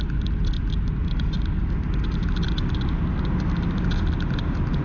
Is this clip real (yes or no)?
yes